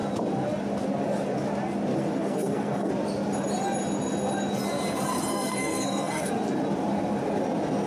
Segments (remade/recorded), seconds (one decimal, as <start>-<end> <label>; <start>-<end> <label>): 0.0-1.9 recorded; 1.9-2.9 remade; 2.9-5.3 recorded; 5.3-6.3 remade; 6.3-7.9 recorded